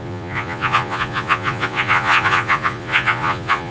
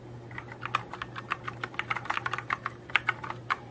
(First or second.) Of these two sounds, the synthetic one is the first